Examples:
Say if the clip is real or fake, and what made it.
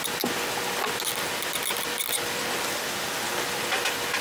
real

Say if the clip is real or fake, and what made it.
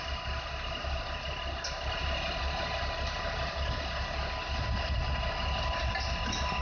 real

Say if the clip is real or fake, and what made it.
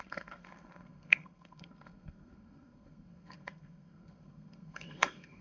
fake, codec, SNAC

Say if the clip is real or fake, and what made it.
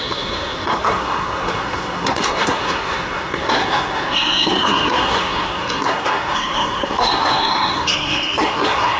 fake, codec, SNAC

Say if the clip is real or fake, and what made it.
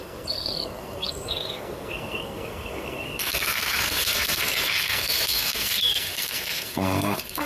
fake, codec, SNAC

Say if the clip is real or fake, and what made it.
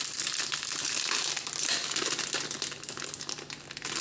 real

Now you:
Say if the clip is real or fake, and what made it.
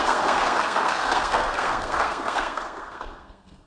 fake, codec, SNAC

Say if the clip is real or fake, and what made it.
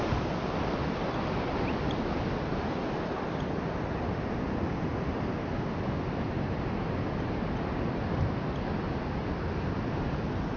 real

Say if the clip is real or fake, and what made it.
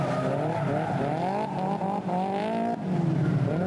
real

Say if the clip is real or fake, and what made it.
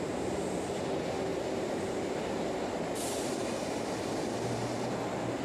real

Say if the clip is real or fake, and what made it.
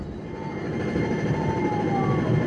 real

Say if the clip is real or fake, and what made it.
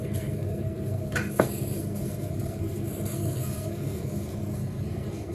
fake, codec, SNAC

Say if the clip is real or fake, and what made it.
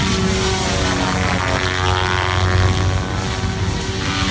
real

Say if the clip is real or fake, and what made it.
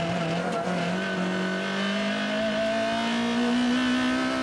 real